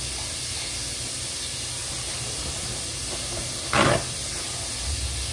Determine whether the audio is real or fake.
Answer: real